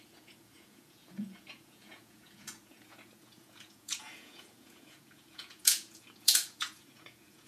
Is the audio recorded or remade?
remade